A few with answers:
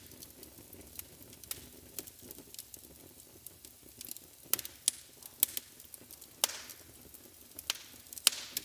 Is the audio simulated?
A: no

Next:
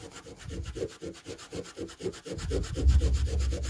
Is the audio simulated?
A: no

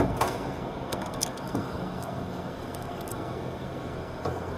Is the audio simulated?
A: yes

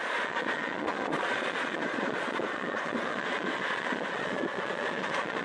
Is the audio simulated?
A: yes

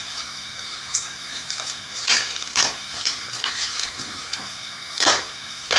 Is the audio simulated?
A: yes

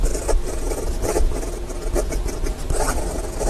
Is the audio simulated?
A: no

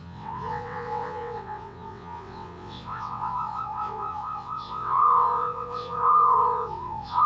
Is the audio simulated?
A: yes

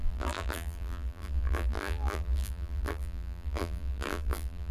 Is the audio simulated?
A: yes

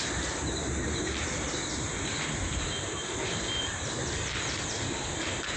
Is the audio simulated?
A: no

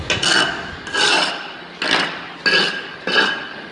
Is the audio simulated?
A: no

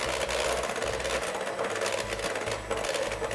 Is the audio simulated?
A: no